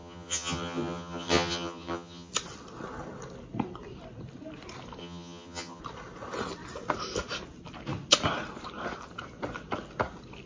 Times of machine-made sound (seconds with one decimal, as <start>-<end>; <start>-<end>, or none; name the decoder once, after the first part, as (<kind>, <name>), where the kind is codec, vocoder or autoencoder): 0.0-2.3 (vocoder, HiFi-GAN); 5.0-5.8